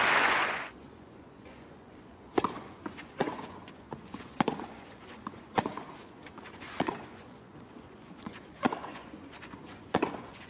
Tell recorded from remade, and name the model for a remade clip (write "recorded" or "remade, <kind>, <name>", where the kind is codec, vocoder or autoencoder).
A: remade, vocoder, Vocos